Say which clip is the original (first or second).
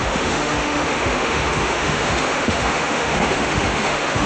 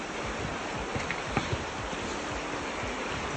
second